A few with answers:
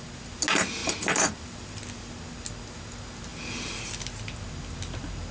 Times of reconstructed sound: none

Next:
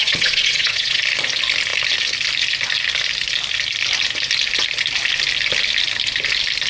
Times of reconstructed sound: 0.0-1.0 (vocoder, Vocos)

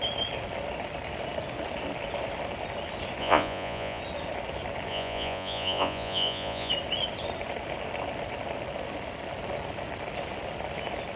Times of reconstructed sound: 3.2-4.0 (vocoder, Vocos); 4.9-6.7

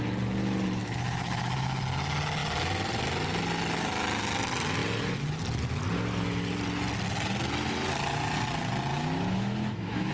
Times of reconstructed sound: 0.8-1.8 (autoencoder, DAC-VAE); 8.9-10.1

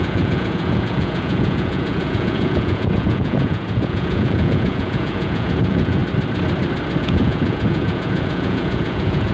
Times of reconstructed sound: 0.0-6.0 (vocoder, Vocos); 7.0-9.3

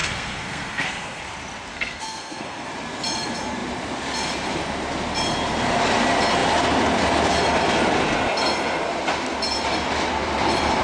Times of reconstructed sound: 0.0-1.2 (codec, SNAC); 1.7-2.7

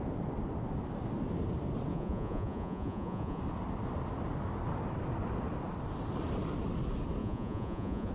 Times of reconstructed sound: 1.9-3.4 (vocoder, Vocos); 7.2-8.1

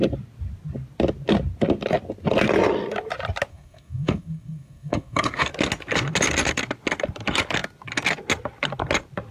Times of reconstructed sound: 3.5-5.5 (codec, SNAC)